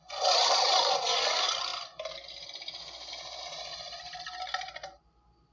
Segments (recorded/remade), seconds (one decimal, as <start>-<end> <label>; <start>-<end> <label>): 0.0-1.7 recorded; 1.7-3.1 remade; 3.1-5.5 recorded